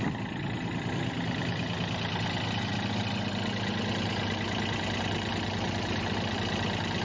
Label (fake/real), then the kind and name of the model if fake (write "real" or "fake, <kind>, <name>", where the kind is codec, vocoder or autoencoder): real